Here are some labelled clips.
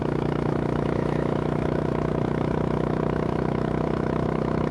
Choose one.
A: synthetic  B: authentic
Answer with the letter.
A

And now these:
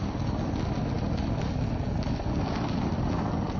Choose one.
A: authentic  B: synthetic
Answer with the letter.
A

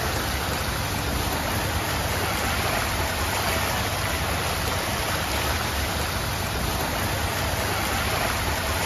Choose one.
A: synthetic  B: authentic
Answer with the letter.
B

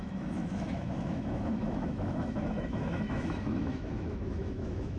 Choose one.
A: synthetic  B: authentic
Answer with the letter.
A